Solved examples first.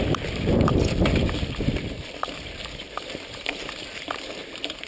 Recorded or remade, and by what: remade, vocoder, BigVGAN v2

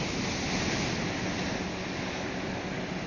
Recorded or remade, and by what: recorded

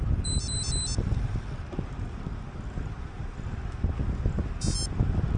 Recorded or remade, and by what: recorded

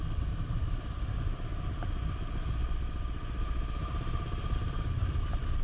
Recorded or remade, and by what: recorded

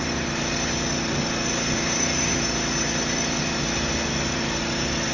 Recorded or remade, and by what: recorded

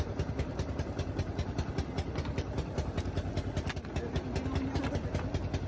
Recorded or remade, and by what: recorded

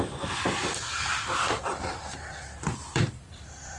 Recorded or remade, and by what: remade, vocoder, BigVGAN v2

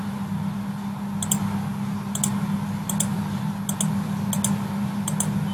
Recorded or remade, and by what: recorded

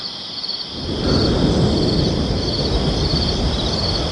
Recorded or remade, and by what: recorded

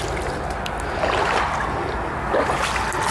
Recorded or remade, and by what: recorded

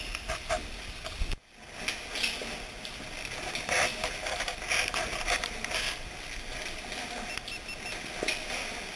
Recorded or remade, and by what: recorded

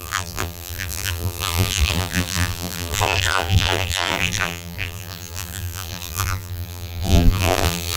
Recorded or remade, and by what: remade, vocoder, BigVGAN v2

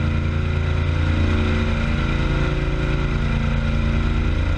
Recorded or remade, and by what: recorded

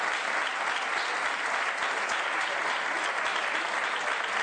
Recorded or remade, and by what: recorded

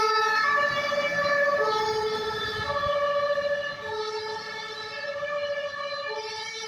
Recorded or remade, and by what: remade, vocoder, BigVGAN v2